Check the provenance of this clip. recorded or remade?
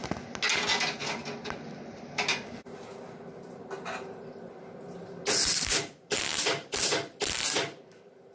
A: recorded